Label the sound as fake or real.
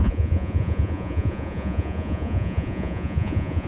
fake